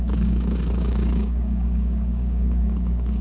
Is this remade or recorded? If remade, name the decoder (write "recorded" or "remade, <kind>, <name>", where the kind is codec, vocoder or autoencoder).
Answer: remade, codec, DAC